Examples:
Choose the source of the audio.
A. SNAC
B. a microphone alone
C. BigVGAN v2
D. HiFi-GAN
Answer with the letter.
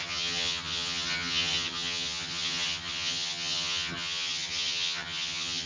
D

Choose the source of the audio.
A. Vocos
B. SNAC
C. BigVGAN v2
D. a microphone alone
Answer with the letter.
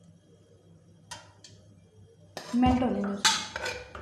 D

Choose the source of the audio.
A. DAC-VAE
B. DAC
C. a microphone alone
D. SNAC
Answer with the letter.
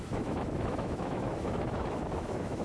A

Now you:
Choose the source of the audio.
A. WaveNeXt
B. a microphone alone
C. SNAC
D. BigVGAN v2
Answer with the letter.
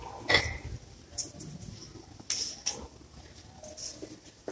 B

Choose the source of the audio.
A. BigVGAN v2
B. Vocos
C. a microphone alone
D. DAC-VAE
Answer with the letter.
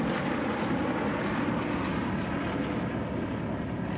C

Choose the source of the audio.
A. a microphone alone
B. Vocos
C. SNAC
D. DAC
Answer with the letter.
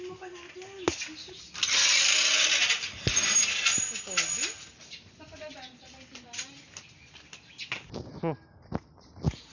A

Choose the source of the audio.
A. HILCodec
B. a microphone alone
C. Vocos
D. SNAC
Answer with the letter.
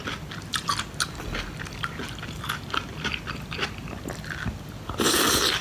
B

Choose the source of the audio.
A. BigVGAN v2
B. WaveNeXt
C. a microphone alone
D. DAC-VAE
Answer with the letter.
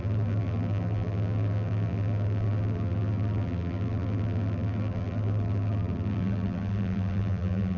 A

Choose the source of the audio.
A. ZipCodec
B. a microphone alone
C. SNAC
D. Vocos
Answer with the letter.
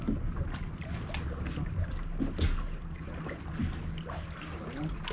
B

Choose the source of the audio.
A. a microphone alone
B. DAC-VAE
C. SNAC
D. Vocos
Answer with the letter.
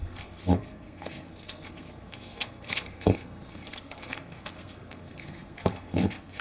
C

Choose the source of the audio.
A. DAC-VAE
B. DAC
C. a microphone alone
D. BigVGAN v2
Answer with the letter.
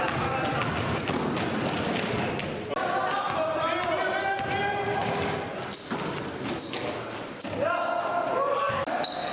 C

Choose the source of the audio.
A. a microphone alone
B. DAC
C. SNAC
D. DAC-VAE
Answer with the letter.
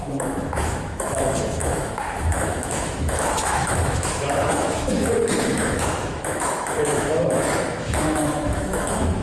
D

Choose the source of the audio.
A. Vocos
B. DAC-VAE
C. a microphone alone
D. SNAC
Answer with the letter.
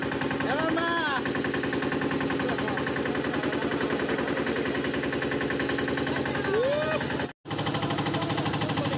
C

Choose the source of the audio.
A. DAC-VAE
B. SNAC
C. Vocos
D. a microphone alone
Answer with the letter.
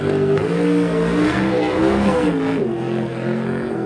B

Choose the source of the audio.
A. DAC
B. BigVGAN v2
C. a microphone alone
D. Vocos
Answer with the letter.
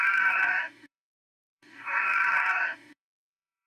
A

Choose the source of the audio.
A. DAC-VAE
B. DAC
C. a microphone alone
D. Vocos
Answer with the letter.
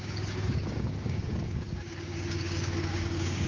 B